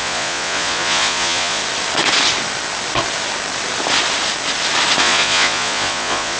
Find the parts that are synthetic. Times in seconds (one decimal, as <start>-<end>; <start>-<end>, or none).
0.0-1.6; 5.0-6.4